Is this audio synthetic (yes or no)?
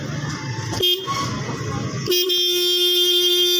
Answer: no